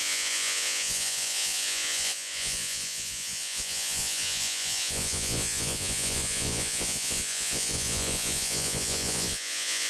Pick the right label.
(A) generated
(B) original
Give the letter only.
A